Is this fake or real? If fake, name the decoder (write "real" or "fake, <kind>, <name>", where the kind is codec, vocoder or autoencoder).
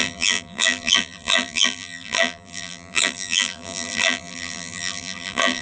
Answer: fake, vocoder, BigVGAN v2